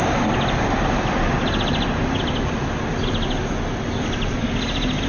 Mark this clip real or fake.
real